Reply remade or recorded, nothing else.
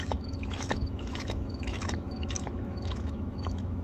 remade